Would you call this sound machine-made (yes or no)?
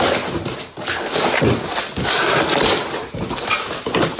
no